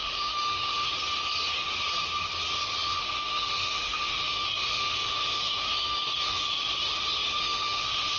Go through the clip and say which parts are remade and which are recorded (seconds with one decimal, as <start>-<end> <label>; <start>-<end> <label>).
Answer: 0.0-0.9 remade; 0.9-3.0 recorded; 3.0-6.7 remade; 6.7-7.4 recorded; 7.4-8.2 remade